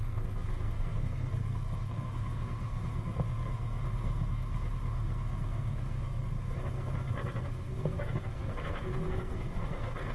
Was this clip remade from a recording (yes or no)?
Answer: yes